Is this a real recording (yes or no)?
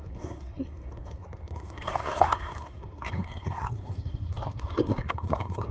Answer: no